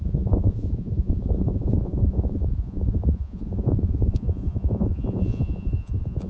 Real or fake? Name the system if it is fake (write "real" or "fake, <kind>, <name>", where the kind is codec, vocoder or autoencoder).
fake, vocoder, Vocos